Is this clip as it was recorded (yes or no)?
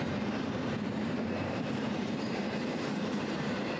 no